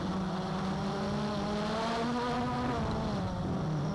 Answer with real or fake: real